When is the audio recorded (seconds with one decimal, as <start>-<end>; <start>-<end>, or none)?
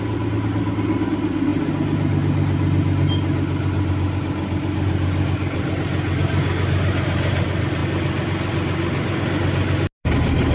0.0-10.5